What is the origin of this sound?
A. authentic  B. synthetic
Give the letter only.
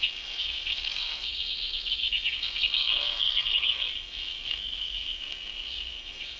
B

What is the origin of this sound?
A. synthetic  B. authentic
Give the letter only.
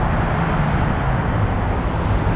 B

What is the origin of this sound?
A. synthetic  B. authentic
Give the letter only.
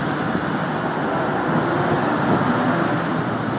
B